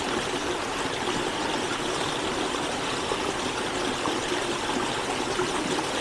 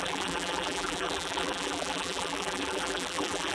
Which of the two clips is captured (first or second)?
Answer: first